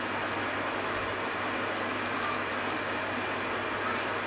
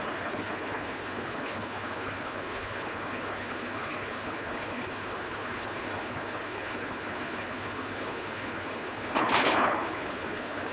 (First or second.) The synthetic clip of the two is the second